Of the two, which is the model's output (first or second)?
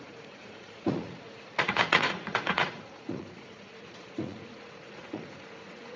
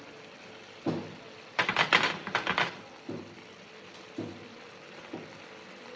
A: first